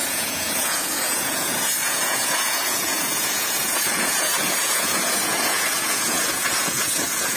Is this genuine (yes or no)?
no